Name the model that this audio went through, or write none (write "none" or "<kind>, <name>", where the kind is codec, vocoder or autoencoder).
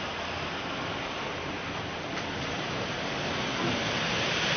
none